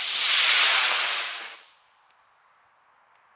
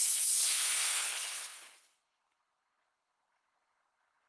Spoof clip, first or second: second